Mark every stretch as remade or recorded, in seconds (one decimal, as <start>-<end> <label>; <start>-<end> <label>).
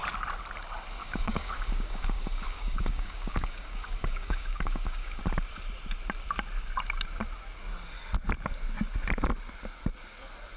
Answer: 0.0-1.0 recorded; 1.0-5.2 remade; 5.2-10.6 recorded